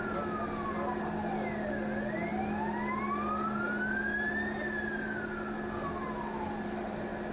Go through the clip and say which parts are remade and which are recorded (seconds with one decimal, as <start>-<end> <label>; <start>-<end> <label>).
0.0-7.3 recorded